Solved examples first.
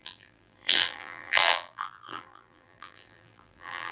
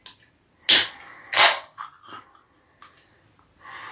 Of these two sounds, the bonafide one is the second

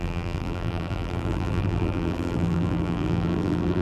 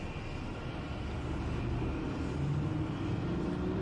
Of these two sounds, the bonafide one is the second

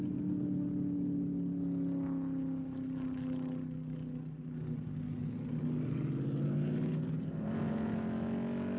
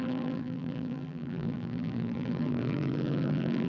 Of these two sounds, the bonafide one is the first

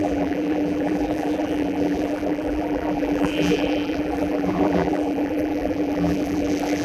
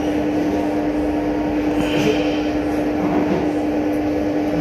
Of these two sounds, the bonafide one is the second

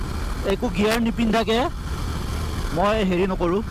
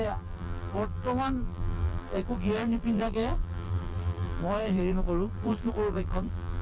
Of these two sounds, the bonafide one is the first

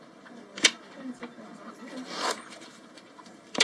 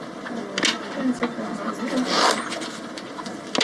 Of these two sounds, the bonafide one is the second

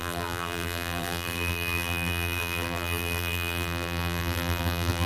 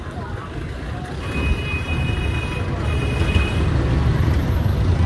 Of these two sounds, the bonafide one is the second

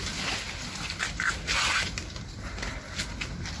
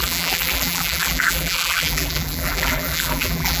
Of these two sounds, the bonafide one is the first